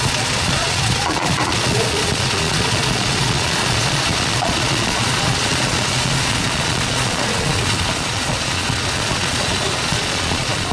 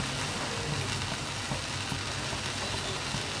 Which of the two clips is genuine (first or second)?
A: second